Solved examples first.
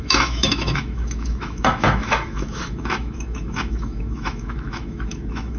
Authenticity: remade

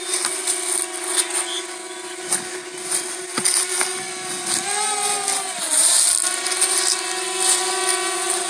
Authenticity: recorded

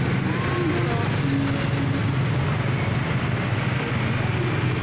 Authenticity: recorded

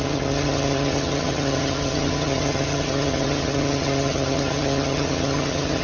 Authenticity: remade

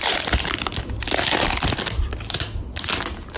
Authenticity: recorded